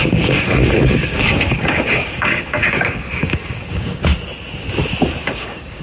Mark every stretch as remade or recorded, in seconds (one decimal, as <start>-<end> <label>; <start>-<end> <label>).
0.0-4.1 remade; 4.1-5.2 recorded; 5.2-5.8 remade